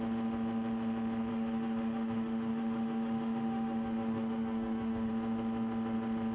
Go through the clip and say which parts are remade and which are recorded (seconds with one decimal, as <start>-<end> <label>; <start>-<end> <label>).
0.0-1.3 recorded; 1.3-5.1 remade; 5.1-6.3 recorded